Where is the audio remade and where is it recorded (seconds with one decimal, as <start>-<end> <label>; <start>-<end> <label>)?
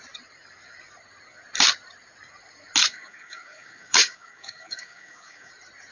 0.0-2.9 recorded; 2.9-5.5 remade; 5.5-5.9 recorded